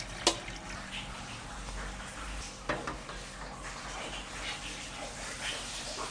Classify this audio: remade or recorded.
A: recorded